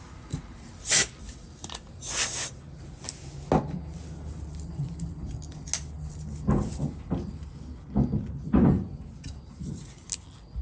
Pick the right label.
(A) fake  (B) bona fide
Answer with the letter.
B